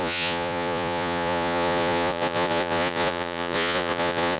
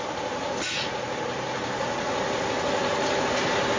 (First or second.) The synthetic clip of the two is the first